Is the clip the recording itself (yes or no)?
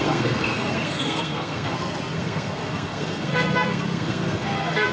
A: no